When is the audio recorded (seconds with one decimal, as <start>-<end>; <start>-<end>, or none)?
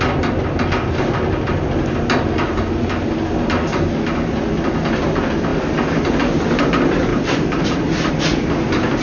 0.0-7.1; 8.1-9.0